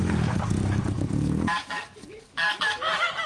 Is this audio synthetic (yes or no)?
yes